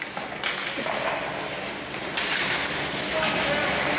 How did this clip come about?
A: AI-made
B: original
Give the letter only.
B